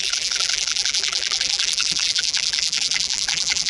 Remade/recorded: remade